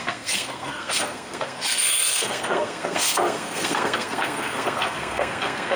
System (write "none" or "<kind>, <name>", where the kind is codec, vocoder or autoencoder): codec, SNAC